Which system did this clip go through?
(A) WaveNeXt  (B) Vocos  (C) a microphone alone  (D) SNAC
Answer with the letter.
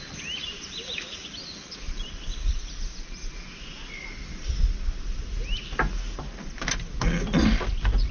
C